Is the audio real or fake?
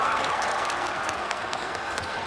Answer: fake